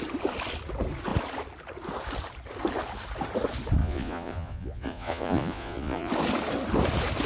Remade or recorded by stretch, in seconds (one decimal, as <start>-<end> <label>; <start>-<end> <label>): 0.0-3.8 recorded; 3.8-6.1 remade; 6.1-7.3 recorded